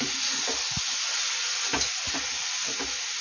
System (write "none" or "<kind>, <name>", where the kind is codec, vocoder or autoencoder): none